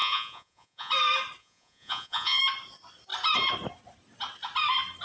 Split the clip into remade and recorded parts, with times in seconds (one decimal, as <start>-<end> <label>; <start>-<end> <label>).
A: 0.0-0.9 remade; 0.9-1.4 recorded; 1.4-2.4 remade; 2.4-5.0 recorded